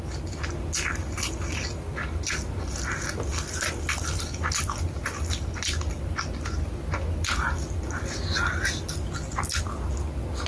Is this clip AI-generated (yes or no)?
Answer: no